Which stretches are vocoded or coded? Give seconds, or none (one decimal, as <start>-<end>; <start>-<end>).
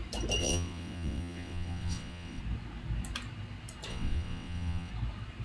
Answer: 0.4-2.4; 3.9-4.9